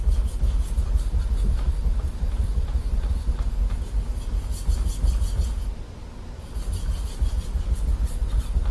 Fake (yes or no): no